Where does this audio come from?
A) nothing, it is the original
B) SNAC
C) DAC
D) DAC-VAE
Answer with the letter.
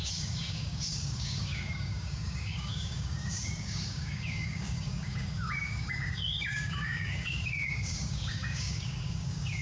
C